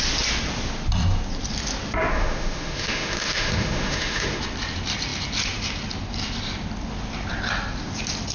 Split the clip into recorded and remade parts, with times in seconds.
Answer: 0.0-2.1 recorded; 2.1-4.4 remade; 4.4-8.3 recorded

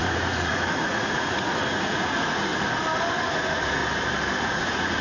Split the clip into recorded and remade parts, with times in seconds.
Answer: 0.0-2.5 remade; 2.5-3.1 recorded; 3.1-3.8 remade; 3.8-4.4 recorded; 4.4-5.0 remade